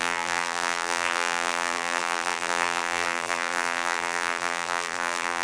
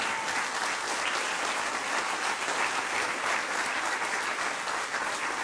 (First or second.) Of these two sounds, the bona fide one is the second